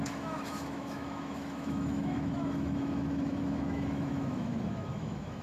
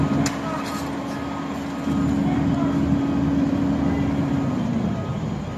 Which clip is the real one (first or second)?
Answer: second